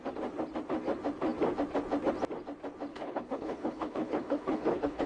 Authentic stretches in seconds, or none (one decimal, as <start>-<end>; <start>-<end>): 0.0-2.9